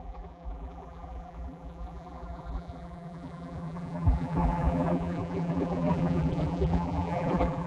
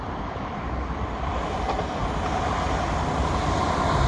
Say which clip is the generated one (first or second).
first